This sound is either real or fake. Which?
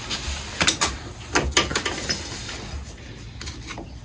real